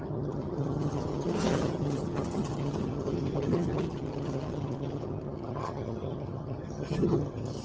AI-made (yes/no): yes